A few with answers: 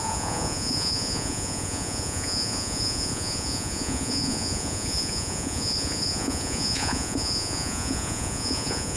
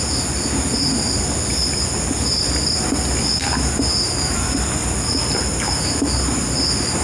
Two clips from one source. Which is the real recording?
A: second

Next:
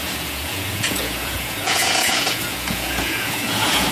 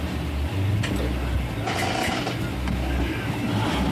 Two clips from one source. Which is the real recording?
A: second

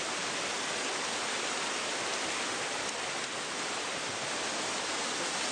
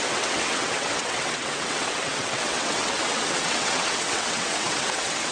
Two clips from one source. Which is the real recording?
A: first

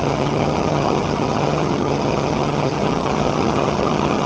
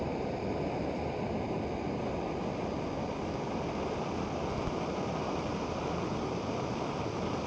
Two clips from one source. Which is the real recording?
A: second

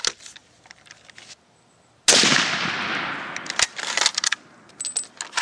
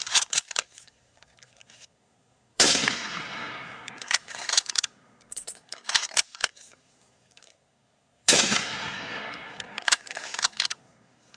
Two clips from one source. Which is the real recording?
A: first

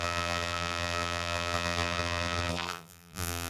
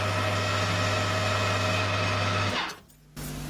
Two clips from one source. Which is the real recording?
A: second